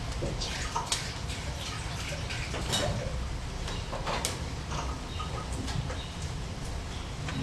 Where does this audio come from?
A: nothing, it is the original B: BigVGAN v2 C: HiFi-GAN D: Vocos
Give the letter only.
A